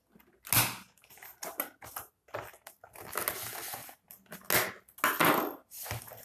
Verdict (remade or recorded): recorded